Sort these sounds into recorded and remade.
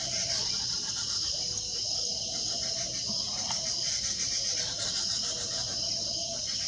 recorded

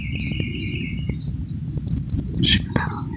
recorded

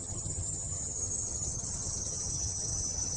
remade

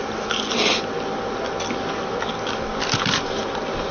recorded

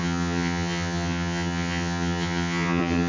remade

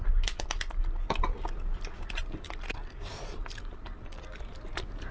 recorded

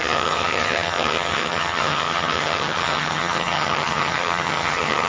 remade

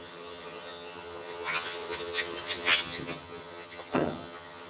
remade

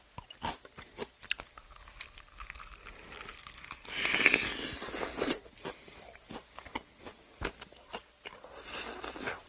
recorded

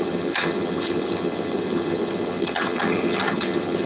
remade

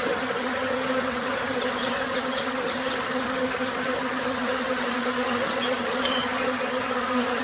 remade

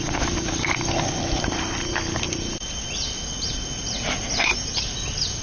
recorded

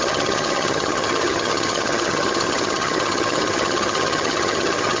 remade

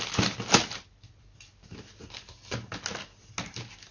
recorded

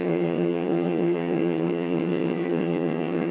remade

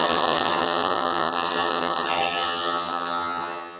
remade